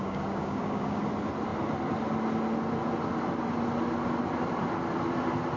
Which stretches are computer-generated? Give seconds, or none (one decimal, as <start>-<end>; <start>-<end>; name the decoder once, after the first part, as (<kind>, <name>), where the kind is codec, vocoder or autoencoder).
0.0-1.0 (codec, DAC)